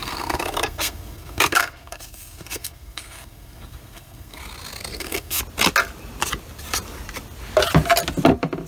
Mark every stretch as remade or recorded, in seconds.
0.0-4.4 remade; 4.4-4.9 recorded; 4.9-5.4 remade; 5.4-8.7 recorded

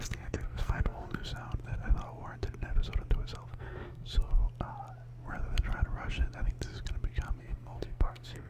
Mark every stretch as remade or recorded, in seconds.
0.0-1.3 remade; 1.3-3.5 recorded; 3.5-4.4 remade; 4.4-7.4 recorded; 7.4-8.5 remade

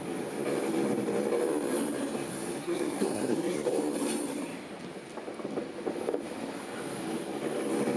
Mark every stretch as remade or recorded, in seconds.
0.0-2.6 recorded; 2.6-3.8 remade; 3.8-8.0 recorded

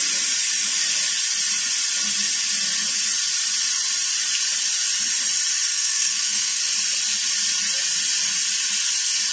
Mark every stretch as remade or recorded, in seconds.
0.0-5.7 recorded; 5.7-6.6 remade; 6.6-9.3 recorded

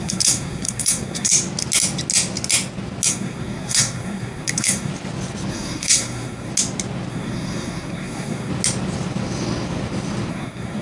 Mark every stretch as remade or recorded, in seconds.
0.0-1.3 remade; 1.3-3.1 recorded; 3.1-4.9 remade; 4.9-5.5 recorded; 5.5-6.5 remade; 6.5-7.1 recorded; 7.1-8.5 remade; 8.5-10.3 recorded; 10.3-10.8 remade

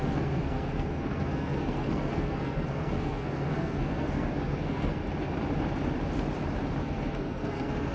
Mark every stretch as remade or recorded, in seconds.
0.0-5.0 remade; 5.0-6.8 recorded; 6.8-7.9 remade